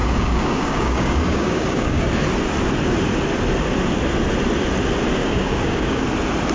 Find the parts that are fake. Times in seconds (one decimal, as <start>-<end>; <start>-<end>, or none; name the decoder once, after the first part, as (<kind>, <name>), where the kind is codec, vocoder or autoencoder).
0.0-2.1 (codec, DAC); 5.2-6.0